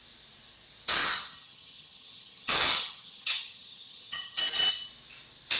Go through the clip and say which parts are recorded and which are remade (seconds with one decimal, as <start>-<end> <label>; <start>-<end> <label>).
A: 0.0-1.0 recorded; 1.0-4.4 remade; 4.4-5.6 recorded

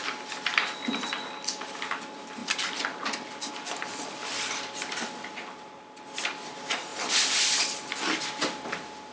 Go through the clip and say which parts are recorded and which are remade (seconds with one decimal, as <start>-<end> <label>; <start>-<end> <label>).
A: 0.0-9.1 recorded